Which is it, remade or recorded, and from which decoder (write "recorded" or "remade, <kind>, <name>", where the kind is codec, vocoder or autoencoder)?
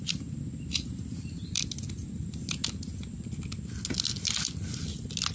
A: recorded